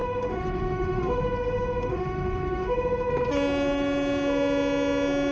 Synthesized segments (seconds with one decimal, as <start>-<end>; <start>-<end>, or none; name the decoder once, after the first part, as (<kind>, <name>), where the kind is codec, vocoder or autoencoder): 0.0-3.1 (autoencoder, DAC-VAE)